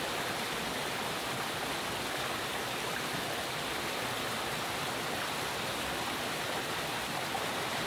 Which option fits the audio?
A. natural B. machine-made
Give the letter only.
A